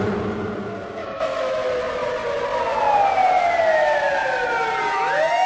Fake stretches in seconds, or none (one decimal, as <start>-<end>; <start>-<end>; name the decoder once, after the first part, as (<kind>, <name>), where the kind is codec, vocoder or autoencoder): 1.0-1.7 (autoencoder, DAC-VAE)